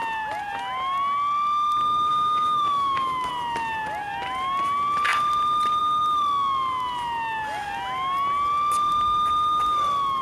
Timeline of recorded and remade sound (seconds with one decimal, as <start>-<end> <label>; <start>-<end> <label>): 0.0-2.1 recorded; 2.1-3.3 remade; 3.3-10.2 recorded